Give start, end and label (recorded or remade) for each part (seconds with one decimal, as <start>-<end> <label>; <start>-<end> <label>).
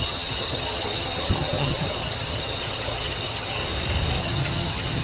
0.0-3.6 remade; 3.6-4.2 recorded; 4.2-5.0 remade